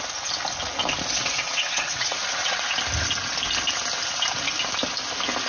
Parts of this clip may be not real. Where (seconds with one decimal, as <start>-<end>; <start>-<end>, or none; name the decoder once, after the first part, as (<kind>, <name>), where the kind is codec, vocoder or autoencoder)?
1.2-2.6 (vocoder, WaveNeXt)